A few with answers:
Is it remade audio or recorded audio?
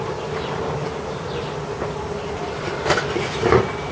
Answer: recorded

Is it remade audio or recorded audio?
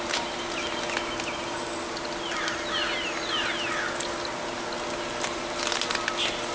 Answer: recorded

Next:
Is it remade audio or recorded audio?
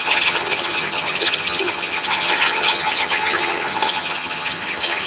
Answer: remade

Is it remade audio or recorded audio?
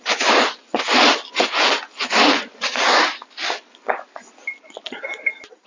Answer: recorded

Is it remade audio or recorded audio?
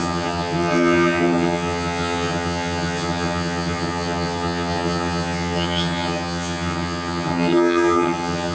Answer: remade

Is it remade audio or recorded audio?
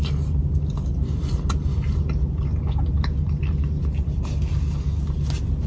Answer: recorded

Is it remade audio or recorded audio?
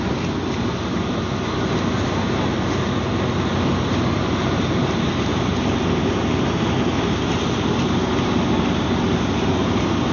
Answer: recorded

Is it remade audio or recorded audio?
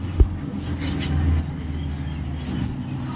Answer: recorded